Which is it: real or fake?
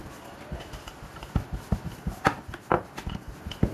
real